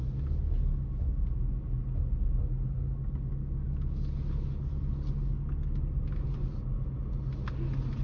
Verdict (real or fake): real